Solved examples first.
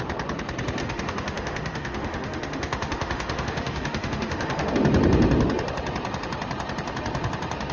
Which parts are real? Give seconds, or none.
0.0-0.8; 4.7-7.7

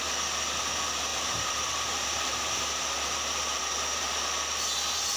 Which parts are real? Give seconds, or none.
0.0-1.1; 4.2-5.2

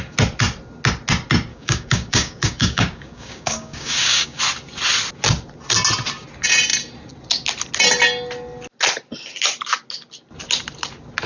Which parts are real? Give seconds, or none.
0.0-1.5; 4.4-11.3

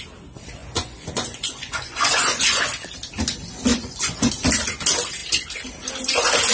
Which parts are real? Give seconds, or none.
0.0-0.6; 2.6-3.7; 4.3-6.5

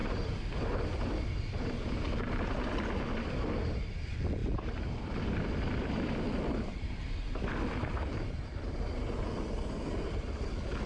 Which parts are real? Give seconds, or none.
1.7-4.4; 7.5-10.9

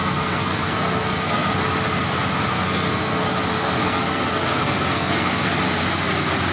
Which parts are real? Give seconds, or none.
1.5-2.5; 3.2-3.6; 5.6-6.5